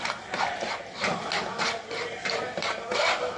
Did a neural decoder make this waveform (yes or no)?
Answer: no